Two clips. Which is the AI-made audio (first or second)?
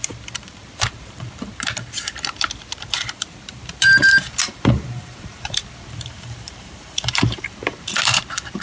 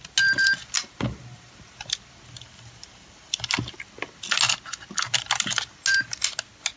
first